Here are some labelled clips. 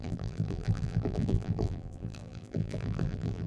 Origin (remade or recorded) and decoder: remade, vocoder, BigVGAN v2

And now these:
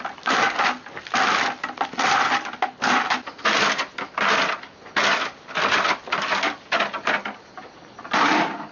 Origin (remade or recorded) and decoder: recorded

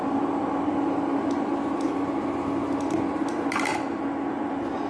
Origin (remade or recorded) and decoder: recorded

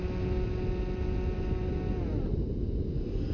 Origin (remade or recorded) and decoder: recorded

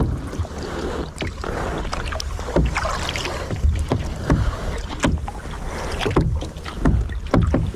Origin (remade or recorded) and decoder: recorded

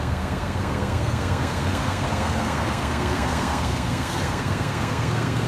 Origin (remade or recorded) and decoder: remade, codec, SNAC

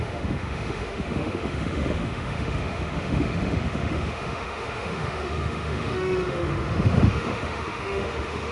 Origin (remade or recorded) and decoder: remade, autoencoder, DAC-VAE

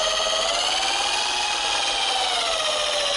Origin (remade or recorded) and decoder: recorded